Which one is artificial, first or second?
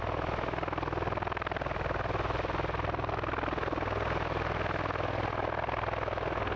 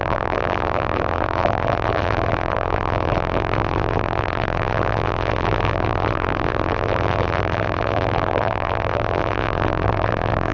second